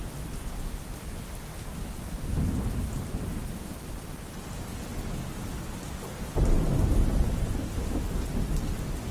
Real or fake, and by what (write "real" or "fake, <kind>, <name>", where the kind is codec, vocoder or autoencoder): real